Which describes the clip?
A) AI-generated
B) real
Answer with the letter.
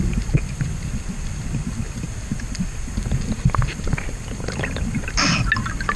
B